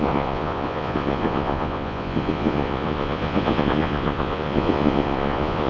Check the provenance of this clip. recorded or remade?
remade